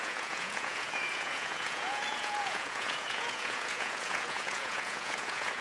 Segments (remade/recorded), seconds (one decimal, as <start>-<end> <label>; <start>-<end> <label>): 0.0-5.6 remade